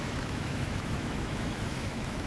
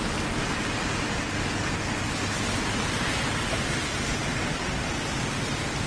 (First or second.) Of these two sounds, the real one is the second